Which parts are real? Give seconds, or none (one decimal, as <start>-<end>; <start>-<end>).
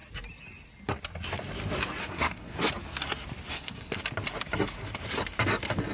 0.0-2.0; 2.6-3.5; 4.0-5.9